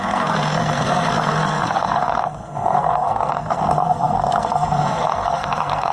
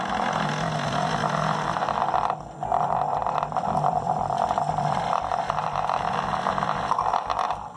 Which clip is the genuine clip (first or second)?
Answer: second